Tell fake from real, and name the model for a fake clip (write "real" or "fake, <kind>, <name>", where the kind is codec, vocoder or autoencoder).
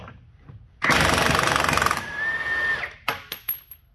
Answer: real